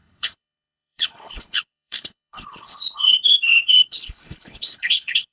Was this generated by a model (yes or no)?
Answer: yes